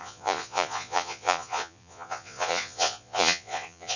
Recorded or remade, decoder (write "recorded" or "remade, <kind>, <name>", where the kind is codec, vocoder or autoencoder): remade, vocoder, Vocos